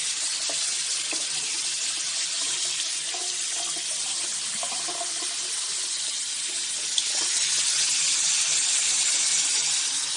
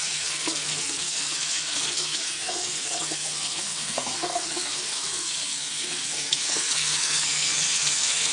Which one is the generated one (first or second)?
second